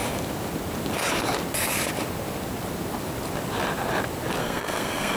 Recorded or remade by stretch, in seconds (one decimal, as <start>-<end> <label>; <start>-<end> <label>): 0.0-4.4 recorded; 4.4-5.2 remade